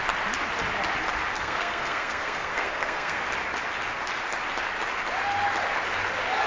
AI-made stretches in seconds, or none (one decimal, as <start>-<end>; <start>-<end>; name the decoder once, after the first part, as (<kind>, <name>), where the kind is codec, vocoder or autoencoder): 1.3-3.2 (codec, SNAC)